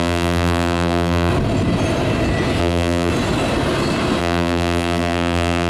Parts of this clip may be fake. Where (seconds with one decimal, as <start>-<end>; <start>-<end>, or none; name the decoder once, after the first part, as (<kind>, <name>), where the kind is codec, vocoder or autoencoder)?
0.0-1.3 (vocoder, BigVGAN v2); 2.6-3.1; 4.2-5.7

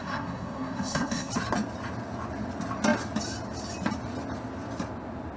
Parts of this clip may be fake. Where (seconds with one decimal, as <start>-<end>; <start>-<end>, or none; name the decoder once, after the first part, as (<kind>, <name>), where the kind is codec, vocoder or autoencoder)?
0.0-1.3 (codec, SNAC)

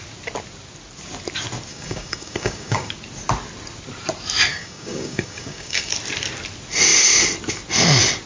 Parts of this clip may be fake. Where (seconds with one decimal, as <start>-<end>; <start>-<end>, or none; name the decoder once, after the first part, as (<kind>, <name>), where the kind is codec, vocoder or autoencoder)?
1.7-2.9 (codec, DAC); 4.5-5.9

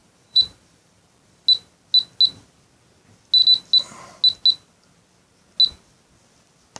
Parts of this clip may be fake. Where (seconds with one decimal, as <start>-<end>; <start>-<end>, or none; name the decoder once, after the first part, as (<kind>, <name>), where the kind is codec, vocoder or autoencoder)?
0.0-1.4 (vocoder, BigVGAN v2)

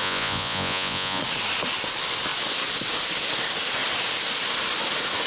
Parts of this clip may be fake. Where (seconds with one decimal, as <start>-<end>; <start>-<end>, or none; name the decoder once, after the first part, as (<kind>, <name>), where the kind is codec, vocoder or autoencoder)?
0.0-1.2 (vocoder, Vocos)

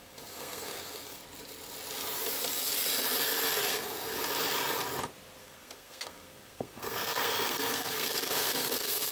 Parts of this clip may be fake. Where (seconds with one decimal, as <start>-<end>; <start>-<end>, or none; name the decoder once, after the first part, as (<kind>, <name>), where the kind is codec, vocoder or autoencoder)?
0.0-1.2 (codec, SNAC); 3.7-4.2; 5.4-9.1